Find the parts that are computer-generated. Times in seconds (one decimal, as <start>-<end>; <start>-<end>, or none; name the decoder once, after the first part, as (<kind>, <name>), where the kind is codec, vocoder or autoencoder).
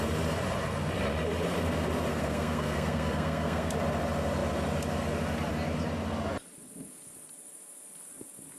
2.1-3.7 (codec, SNAC)